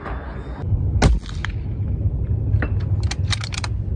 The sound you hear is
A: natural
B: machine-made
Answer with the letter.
A